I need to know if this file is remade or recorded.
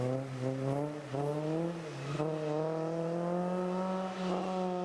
recorded